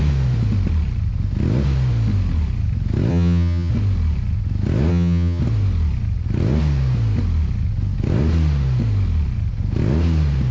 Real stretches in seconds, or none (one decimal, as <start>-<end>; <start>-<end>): 0.0-3.1; 3.7-4.9; 5.4-10.5